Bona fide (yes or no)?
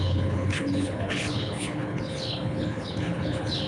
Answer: no